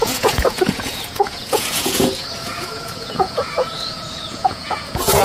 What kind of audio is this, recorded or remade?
remade